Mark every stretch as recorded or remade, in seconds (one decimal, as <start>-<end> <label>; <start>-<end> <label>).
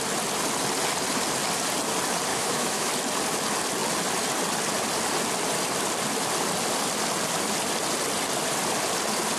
0.0-2.3 recorded; 2.3-2.9 remade; 2.9-9.4 recorded